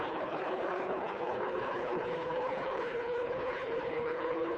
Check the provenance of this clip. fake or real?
fake